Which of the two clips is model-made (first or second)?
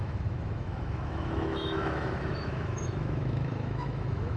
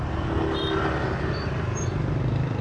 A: first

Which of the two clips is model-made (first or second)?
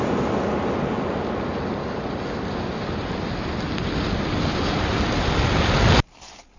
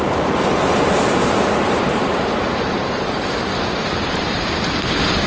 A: second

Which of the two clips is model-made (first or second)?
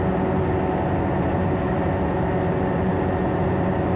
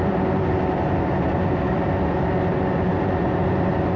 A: second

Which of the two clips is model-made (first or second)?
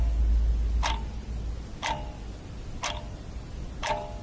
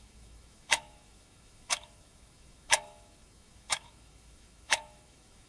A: second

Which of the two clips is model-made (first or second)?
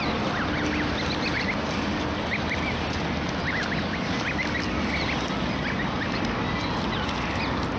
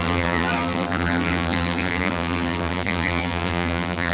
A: second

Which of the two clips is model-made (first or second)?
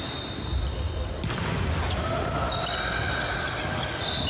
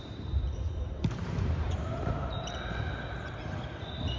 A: second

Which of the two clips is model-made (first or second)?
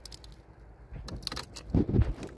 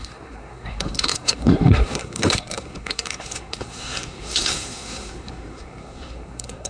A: second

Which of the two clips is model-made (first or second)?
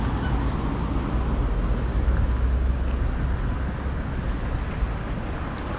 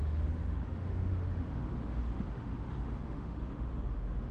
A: second